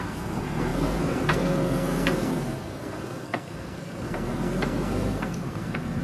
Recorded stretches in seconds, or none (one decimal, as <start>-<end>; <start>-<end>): none